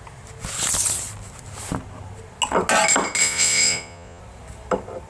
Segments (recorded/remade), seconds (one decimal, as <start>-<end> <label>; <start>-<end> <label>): 0.0-3.2 recorded; 3.2-4.2 remade; 4.2-5.1 recorded